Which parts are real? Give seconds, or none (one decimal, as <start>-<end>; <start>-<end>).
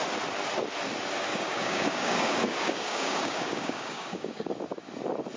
0.0-1.3; 4.5-5.4